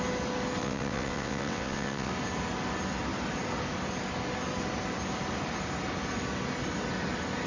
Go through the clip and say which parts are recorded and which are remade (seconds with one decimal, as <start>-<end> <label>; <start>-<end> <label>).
0.0-0.6 recorded; 0.6-2.1 remade; 2.1-7.5 recorded